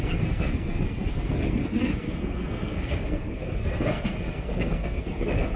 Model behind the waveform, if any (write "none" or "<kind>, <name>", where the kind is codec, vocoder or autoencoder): codec, SNAC